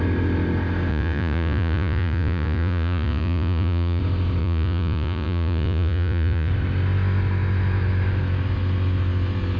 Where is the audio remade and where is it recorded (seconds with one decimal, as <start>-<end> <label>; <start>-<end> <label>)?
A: 0.0-0.9 recorded; 0.9-4.0 remade; 4.0-4.4 recorded; 4.4-6.5 remade; 6.5-9.6 recorded